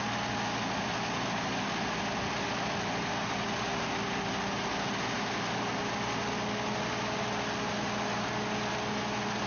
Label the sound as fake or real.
real